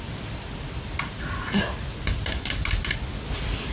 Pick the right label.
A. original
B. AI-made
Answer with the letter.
A